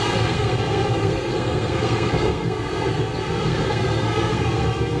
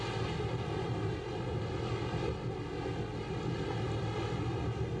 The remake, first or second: first